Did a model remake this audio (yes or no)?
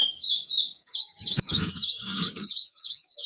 yes